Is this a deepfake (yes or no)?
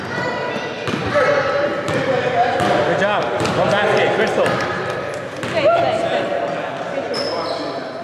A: no